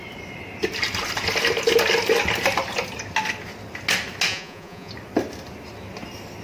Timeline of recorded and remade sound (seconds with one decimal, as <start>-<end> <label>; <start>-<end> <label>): 0.0-4.3 recorded; 4.3-4.9 remade; 4.9-6.4 recorded